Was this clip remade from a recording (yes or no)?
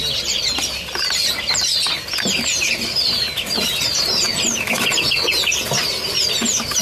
no